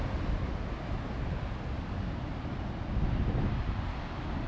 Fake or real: real